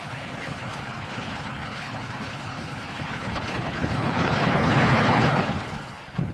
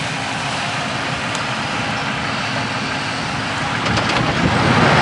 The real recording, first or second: second